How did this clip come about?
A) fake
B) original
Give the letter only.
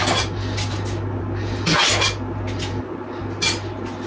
B